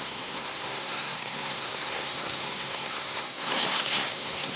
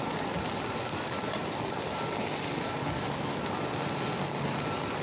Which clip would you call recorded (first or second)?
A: second